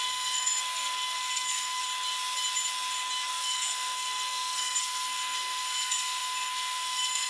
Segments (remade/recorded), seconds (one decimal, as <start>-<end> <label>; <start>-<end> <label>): 0.0-1.8 remade; 1.8-3.3 recorded; 3.3-7.3 remade